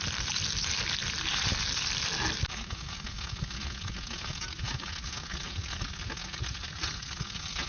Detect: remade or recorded recorded